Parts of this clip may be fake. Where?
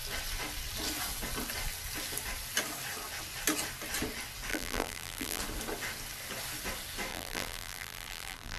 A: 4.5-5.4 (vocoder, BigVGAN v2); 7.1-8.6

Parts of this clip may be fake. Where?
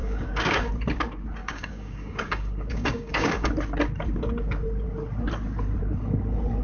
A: 0.0-0.7 (codec, DAC); 1.4-3.5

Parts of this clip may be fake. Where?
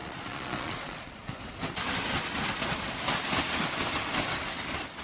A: 0.0-1.3 (vocoder, Vocos)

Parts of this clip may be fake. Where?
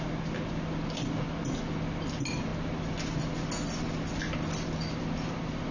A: none